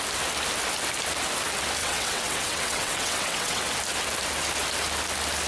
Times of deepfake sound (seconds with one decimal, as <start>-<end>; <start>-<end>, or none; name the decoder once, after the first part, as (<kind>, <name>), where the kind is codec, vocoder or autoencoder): 1.8-3.6 (vocoder, WaveNeXt)